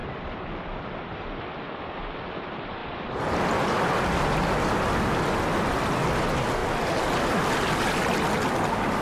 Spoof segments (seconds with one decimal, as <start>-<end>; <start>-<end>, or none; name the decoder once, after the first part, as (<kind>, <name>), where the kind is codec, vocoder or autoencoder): 2.8-4.7 (vocoder, BigVGAN v2); 6.6-7.4

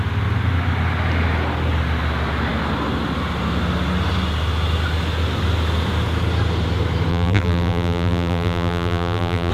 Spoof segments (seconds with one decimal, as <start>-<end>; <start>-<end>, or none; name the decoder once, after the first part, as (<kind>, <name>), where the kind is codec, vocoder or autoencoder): 7.1-9.5 (vocoder, BigVGAN v2)